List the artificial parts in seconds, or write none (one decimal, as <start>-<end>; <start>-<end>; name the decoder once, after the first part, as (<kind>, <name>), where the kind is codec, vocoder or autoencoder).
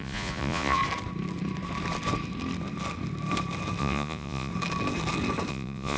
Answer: 0.0-0.8 (vocoder, Vocos); 3.8-4.5; 5.5-6.0